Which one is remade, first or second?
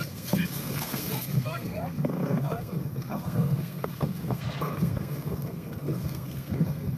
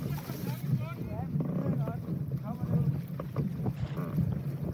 first